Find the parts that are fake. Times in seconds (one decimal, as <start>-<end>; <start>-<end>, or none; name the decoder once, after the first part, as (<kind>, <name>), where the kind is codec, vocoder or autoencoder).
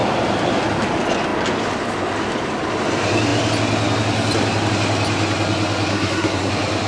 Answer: 5.9-6.5 (codec, SNAC)